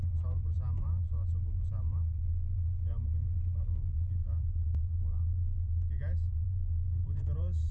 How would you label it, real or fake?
fake